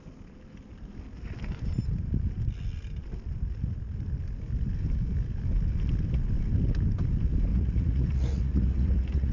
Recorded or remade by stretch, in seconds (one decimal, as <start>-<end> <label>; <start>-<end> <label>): 0.0-7.5 recorded; 7.5-9.3 remade